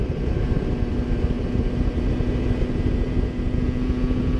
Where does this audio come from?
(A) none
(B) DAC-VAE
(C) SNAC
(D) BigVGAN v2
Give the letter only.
A